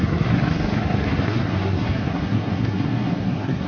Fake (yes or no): yes